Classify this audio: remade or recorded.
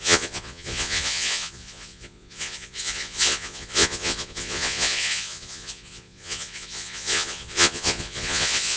remade